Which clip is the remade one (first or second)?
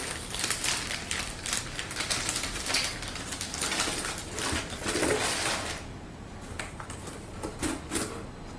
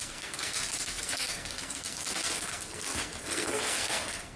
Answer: second